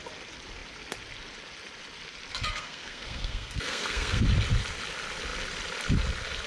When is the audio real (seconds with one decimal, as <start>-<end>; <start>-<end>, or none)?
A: 0.0-2.3; 4.2-6.5